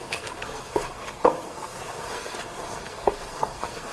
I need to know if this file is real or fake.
fake